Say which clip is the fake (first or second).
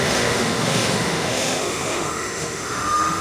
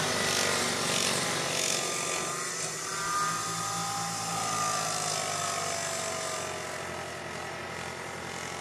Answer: first